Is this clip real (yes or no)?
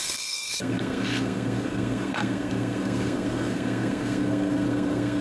no